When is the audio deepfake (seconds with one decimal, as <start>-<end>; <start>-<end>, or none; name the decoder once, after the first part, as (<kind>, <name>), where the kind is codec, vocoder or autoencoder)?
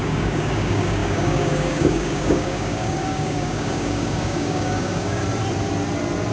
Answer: 0.0-5.2 (codec, DAC)